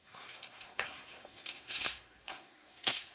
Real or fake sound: fake